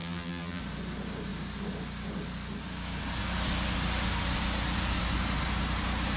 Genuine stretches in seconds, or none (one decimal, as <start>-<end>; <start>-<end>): 0.6-6.2